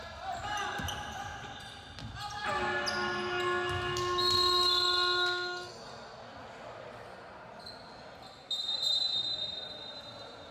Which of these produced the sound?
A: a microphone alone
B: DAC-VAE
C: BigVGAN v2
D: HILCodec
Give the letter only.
A